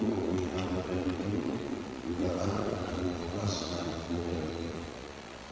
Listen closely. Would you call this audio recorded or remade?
remade